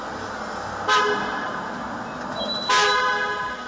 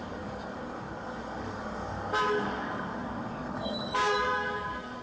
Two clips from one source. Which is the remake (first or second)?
second